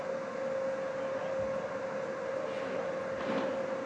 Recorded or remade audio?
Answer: recorded